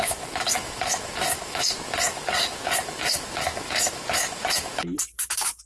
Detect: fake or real fake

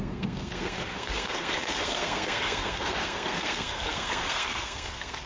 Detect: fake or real fake